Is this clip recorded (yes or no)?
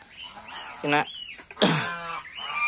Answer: yes